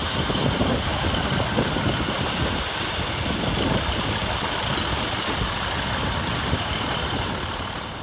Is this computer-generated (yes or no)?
no